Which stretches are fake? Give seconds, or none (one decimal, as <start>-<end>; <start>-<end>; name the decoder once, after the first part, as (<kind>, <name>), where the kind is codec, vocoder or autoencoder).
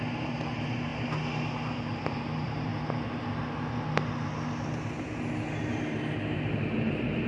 0.0-0.9 (vocoder, BigVGAN v2); 2.1-2.7; 6.5-7.3